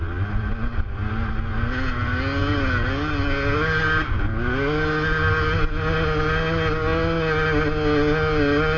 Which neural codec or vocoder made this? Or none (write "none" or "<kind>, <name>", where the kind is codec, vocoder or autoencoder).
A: none